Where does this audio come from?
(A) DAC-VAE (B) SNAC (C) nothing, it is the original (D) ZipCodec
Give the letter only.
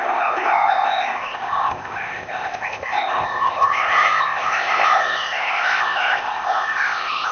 D